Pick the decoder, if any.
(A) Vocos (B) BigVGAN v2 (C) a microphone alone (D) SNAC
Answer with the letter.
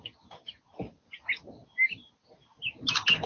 C